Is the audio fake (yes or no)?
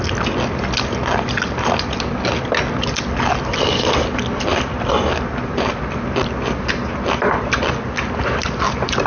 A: no